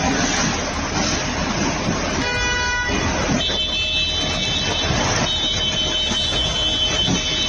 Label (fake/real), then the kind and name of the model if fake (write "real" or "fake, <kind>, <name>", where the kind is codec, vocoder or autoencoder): real